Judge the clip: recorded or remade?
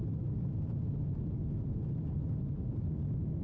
recorded